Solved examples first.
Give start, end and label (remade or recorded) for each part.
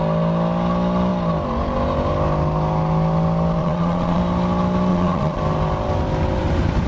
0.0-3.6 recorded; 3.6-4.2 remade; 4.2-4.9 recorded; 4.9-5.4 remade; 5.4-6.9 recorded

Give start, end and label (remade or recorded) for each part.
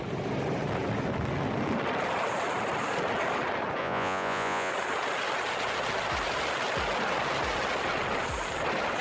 0.0-3.8 recorded; 3.8-4.7 remade; 4.7-9.0 recorded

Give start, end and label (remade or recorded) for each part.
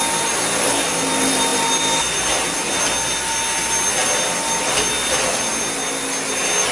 0.0-6.7 recorded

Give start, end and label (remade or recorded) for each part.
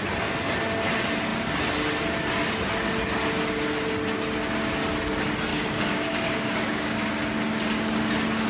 0.0-5.5 recorded; 5.5-7.1 remade; 7.1-8.5 recorded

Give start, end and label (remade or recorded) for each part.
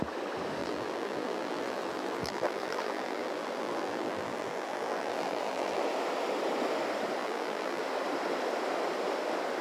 0.0-0.6 recorded; 0.6-5.8 remade; 5.8-7.2 recorded; 7.2-7.8 remade; 7.8-9.6 recorded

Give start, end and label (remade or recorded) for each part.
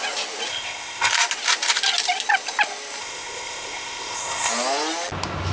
0.0-0.5 recorded; 0.5-1.1 remade; 1.1-3.0 recorded; 3.0-4.5 remade; 4.5-5.5 recorded